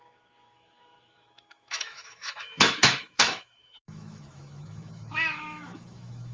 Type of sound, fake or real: fake